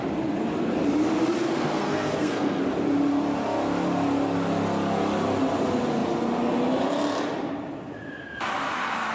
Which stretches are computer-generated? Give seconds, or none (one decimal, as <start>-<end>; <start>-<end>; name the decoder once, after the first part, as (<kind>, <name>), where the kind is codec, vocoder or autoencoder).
1.4-2.6 (codec, SNAC)